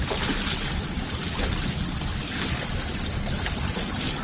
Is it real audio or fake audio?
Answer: real